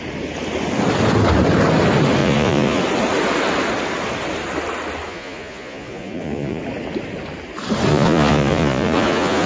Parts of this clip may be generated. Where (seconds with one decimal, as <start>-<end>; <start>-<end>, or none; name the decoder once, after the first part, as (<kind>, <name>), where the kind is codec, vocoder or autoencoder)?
2.2-2.8 (vocoder, Vocos); 5.1-6.6; 7.9-9.5